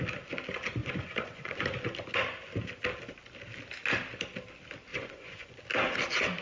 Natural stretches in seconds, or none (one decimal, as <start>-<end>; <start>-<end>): 0.0-0.8; 1.6-4.9; 5.6-6.4